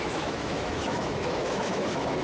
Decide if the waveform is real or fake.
fake